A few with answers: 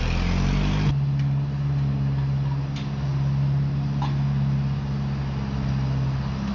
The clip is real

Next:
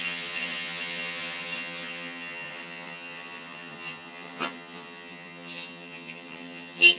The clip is fake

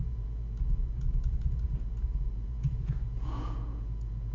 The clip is fake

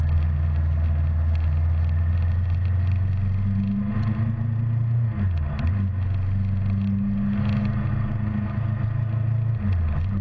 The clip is real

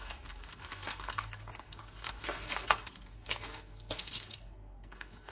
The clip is fake